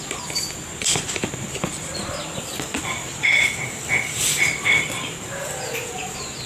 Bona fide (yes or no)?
no